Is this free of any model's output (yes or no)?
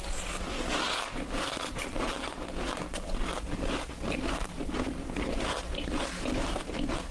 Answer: yes